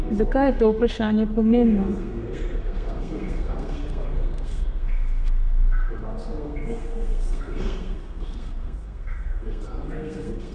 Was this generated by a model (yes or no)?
yes